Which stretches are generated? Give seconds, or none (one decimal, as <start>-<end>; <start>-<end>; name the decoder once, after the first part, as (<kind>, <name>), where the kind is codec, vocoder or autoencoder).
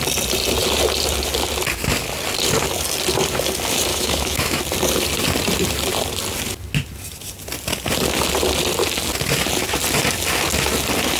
3.9-4.6 (autoencoder, DAC-VAE)